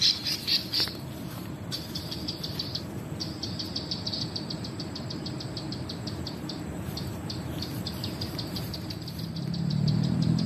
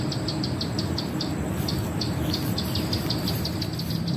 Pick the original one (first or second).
second